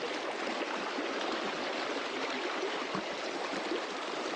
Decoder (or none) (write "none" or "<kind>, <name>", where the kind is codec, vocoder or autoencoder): none